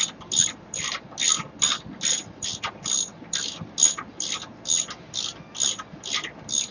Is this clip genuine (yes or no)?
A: yes